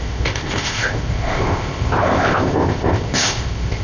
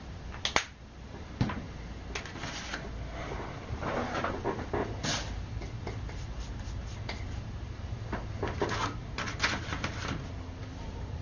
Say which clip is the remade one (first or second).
first